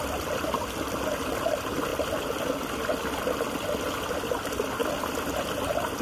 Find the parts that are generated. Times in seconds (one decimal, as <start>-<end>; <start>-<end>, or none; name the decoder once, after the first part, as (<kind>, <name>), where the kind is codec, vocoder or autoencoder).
0.0-1.9 (vocoder, BigVGAN v2); 4.1-4.8; 5.4-6.0